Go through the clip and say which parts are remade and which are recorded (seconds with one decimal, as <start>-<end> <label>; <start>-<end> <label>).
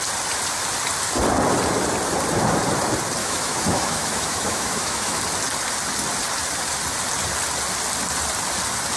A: 0.0-3.2 recorded; 3.2-5.2 remade; 5.2-9.0 recorded